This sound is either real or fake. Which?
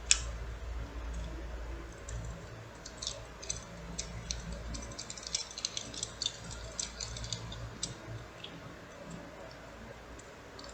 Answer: real